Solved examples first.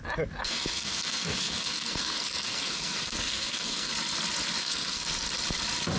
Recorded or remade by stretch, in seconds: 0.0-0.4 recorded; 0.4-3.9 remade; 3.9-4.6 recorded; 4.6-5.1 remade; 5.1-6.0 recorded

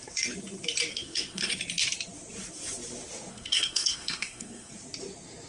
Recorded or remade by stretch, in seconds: 0.0-0.9 recorded; 0.9-1.5 remade; 1.5-3.3 recorded; 3.3-4.7 remade; 4.7-5.5 recorded

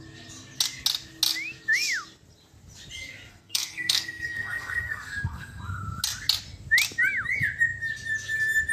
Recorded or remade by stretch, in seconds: 0.0-3.3 recorded; 3.3-5.6 remade; 5.6-8.7 recorded

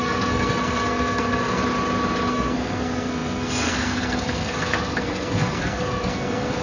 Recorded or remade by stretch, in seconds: 0.0-1.6 remade; 1.6-2.3 recorded; 2.3-6.6 remade

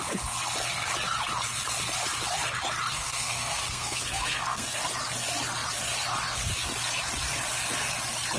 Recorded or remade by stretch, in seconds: 0.0-2.9 recorded; 2.9-4.8 remade; 4.8-8.4 recorded

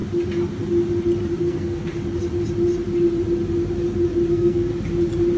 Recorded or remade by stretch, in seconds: 0.0-1.4 recorded; 1.4-1.9 remade; 1.9-4.3 recorded; 4.3-4.7 remade; 4.7-5.4 recorded